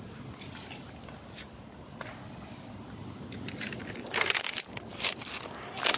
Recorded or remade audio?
recorded